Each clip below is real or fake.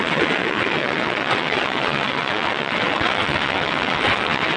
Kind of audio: fake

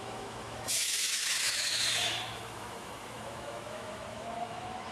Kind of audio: fake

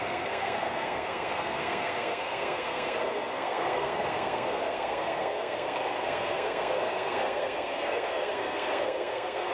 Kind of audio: fake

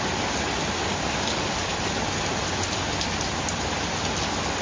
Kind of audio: real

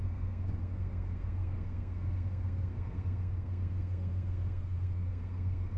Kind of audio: fake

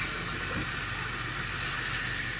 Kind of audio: real